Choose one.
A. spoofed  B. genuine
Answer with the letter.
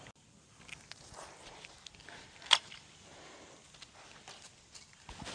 B